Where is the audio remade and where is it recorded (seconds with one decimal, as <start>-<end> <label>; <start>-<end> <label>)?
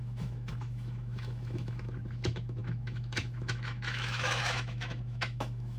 0.0-5.8 remade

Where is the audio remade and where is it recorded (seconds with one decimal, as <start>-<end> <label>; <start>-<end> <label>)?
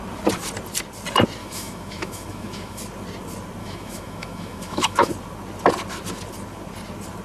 0.0-1.4 recorded; 1.4-2.8 remade; 2.8-3.6 recorded; 3.6-5.1 remade; 5.1-7.2 recorded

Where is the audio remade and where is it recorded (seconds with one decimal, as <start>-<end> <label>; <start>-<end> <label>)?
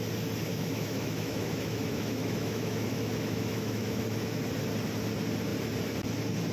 0.0-0.5 recorded; 0.5-4.4 remade; 4.4-6.5 recorded